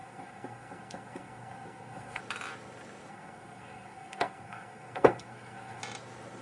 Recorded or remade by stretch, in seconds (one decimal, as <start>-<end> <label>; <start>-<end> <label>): 0.0-2.2 remade; 2.2-3.1 recorded; 3.1-5.8 remade; 5.8-6.4 recorded